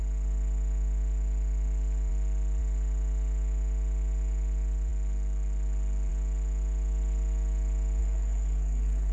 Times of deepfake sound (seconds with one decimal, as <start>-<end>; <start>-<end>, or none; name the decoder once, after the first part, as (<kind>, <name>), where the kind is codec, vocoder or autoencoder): 8.0-9.1 (codec, SNAC)